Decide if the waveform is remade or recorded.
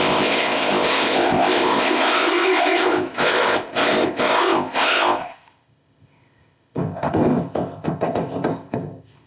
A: remade